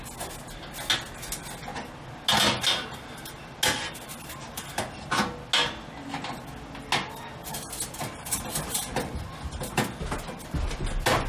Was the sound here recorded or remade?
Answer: recorded